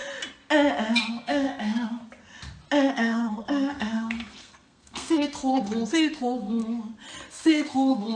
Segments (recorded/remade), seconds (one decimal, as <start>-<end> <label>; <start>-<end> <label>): 0.0-1.0 recorded; 1.0-2.0 remade; 2.0-2.9 recorded; 2.9-6.6 remade; 6.6-7.3 recorded; 7.3-8.2 remade

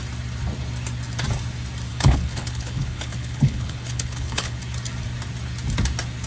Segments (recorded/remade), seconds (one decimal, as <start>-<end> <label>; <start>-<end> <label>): 0.0-1.9 recorded; 1.9-4.6 remade; 4.6-6.3 recorded

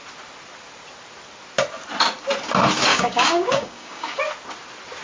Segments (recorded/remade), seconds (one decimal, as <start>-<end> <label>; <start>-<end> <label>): 0.0-2.9 recorded; 2.9-4.2 remade; 4.2-5.0 recorded

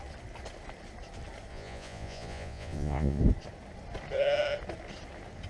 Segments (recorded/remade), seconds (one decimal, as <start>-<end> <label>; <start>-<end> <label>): 0.0-1.5 recorded; 1.5-3.2 remade; 3.2-5.5 recorded

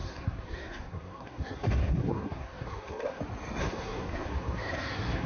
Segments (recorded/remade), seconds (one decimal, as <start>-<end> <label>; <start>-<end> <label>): 0.0-3.2 remade; 3.2-3.6 recorded; 3.6-5.3 remade

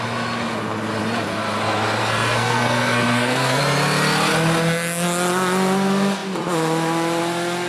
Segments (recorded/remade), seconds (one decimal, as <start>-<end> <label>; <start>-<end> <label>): 0.0-2.0 recorded; 2.0-3.6 remade; 3.6-7.7 recorded

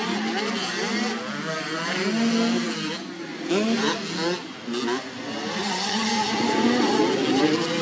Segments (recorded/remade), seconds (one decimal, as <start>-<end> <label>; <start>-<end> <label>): 0.0-5.6 recorded; 5.6-6.1 remade; 6.1-7.8 recorded

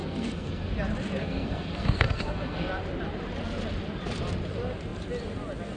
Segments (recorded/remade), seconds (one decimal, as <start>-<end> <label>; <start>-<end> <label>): 0.0-0.7 remade; 0.7-1.2 recorded; 1.2-2.7 remade; 2.7-5.8 recorded